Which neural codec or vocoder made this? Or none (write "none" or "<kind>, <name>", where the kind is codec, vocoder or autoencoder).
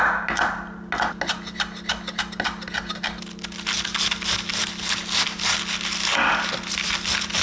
none